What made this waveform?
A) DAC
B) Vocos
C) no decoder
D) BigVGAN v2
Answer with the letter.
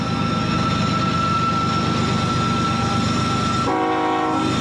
C